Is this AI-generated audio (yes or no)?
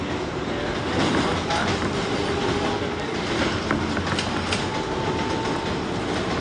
no